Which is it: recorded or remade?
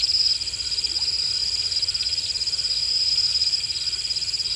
recorded